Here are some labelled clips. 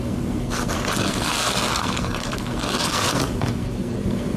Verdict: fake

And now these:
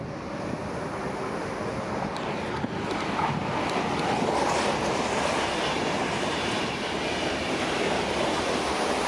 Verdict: real